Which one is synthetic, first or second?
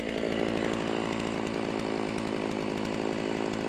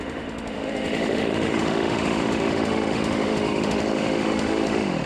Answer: second